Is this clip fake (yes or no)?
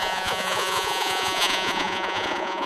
yes